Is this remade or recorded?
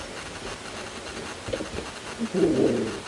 recorded